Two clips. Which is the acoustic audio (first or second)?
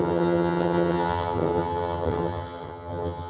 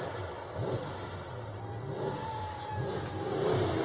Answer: second